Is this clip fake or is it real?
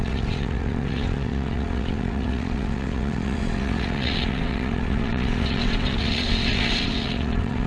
fake